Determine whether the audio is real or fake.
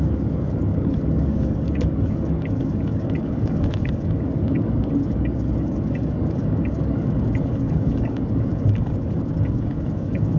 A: fake